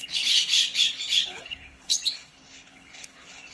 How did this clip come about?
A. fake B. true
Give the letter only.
A